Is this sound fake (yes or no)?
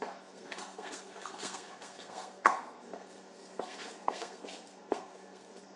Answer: yes